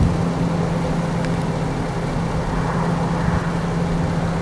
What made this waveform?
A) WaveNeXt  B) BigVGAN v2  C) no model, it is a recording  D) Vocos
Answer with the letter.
C